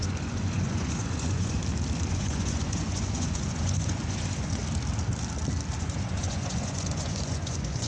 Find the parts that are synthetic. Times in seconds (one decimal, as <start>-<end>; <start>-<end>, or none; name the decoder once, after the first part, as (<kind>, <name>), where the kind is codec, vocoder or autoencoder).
0.0-1.6 (vocoder, Vocos); 2.1-4.6; 5.8-7.9